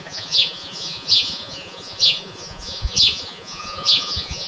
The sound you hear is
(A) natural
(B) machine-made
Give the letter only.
B